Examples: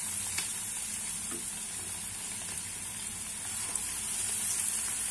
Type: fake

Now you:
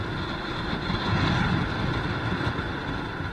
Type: real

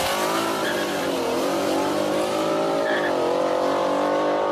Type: fake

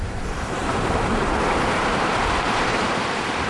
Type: fake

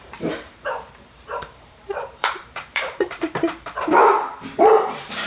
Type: fake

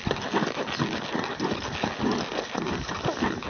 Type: real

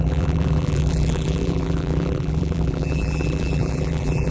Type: fake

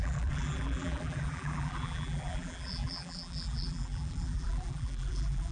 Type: fake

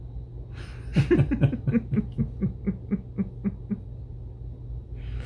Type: real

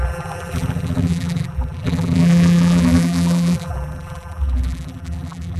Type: fake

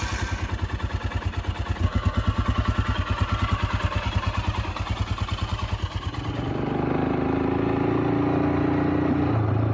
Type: real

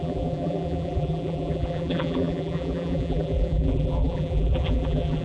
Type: fake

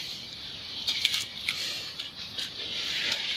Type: fake